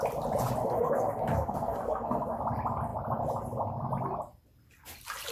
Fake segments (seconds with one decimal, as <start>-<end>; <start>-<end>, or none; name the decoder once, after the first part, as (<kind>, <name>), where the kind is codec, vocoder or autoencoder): 0.6-2.4 (codec, SNAC)